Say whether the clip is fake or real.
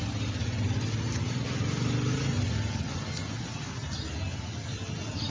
real